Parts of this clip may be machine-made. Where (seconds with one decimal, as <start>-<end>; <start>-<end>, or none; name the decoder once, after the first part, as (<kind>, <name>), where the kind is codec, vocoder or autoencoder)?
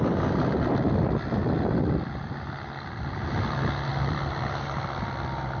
none